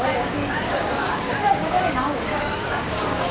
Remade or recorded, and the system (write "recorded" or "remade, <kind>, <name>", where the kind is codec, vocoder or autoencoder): remade, codec, DAC